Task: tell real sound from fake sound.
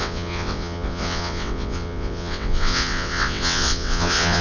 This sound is fake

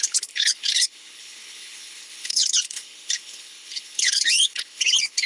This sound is fake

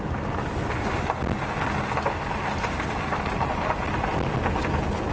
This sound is real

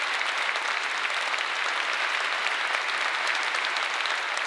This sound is real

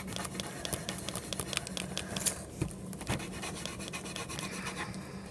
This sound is real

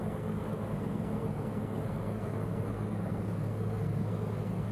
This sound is fake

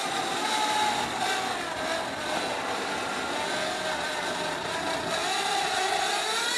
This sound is real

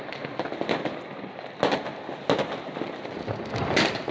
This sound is real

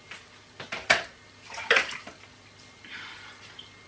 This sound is real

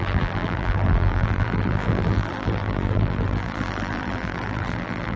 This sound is fake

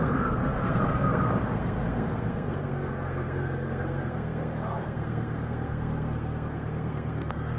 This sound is fake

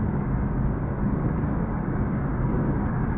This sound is fake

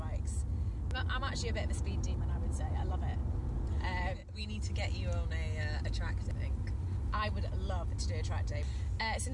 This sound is real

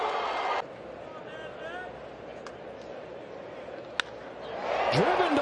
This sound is real